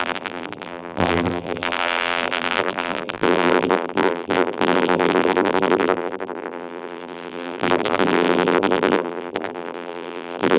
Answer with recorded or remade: remade